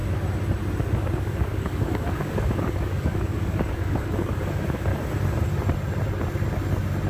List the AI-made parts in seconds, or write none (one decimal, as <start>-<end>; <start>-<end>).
1.0-4.9